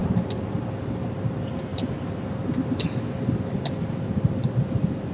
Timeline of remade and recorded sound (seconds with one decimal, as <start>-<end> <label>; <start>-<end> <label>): 0.0-5.1 recorded

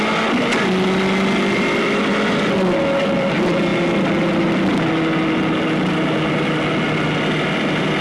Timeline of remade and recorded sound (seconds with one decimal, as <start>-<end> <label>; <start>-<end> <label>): 0.0-8.0 recorded

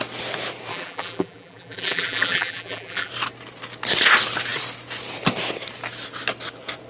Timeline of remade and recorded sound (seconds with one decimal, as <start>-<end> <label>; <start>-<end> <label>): 0.0-0.7 recorded; 0.7-3.1 remade; 3.1-6.9 recorded

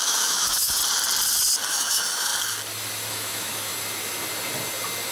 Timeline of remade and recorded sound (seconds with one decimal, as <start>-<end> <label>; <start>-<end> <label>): 0.0-0.8 remade; 0.8-1.7 recorded; 1.7-2.3 remade; 2.3-3.1 recorded; 3.1-3.7 remade; 3.7-5.1 recorded

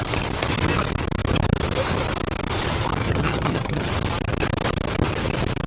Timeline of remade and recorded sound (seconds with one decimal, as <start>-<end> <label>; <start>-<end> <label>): 0.0-3.0 recorded; 3.0-3.9 remade; 3.9-5.7 recorded

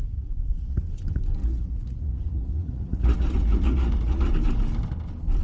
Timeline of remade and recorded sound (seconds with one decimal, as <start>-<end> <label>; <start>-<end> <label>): 0.0-0.8 remade; 0.8-1.4 recorded; 1.4-4.3 remade; 4.3-5.4 recorded

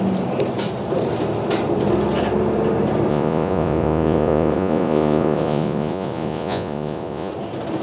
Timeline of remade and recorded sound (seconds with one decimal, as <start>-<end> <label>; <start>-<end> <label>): 0.0-3.1 recorded; 3.1-7.3 remade; 7.3-7.8 recorded